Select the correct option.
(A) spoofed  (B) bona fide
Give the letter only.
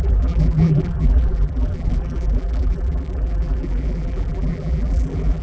A